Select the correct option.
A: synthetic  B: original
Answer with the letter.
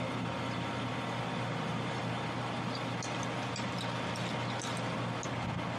B